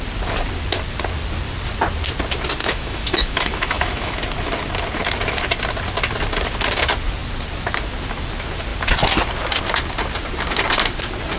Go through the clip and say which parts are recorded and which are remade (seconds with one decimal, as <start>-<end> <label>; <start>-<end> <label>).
0.0-2.6 recorded; 2.6-4.2 remade; 4.2-11.4 recorded